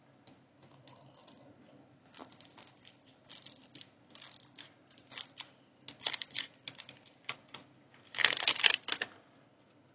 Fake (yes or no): no